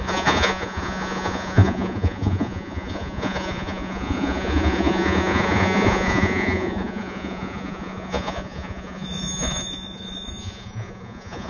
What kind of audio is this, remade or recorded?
remade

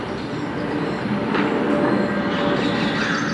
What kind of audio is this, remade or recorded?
recorded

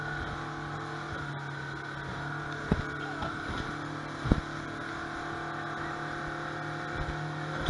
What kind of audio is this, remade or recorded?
recorded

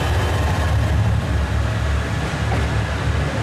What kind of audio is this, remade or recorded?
recorded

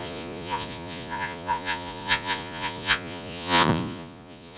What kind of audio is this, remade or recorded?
remade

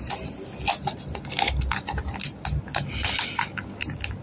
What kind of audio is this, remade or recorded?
recorded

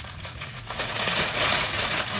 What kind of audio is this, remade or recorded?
remade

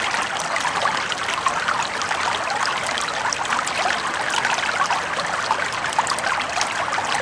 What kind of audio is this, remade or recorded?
recorded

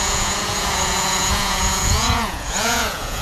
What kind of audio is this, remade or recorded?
remade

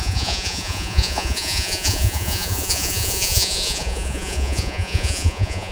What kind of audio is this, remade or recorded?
remade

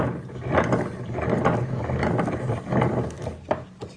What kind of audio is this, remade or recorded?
recorded